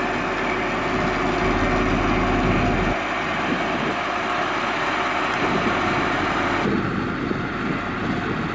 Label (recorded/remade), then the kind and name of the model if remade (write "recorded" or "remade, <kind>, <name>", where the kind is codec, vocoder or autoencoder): recorded